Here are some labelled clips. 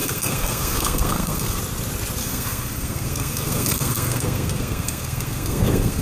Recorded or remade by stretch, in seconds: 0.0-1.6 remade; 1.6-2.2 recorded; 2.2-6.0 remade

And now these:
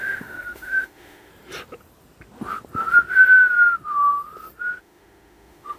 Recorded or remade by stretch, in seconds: 0.0-1.3 remade; 1.3-4.8 recorded; 4.8-5.8 remade

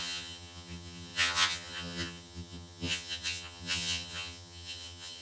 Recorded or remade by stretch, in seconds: 0.0-5.2 remade

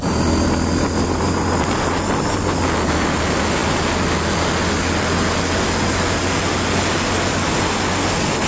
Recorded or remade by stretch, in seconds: 0.0-8.5 recorded

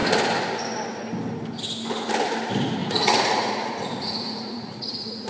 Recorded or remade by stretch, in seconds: 0.0-2.8 recorded; 2.8-5.3 remade

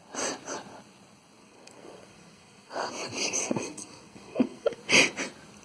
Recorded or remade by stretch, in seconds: 0.0-1.4 recorded; 1.4-2.9 remade; 2.9-3.4 recorded; 3.4-4.8 remade; 4.8-5.6 recorded

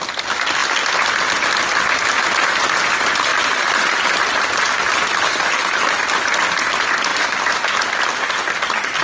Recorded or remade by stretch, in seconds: 0.0-7.1 recorded; 7.1-8.3 remade; 8.3-9.0 recorded